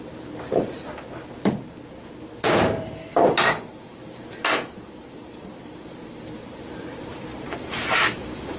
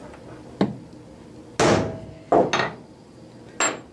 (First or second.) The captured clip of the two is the second